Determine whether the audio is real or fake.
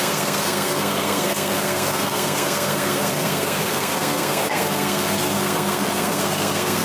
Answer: fake